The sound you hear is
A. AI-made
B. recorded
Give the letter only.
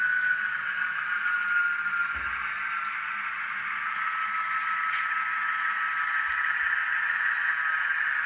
B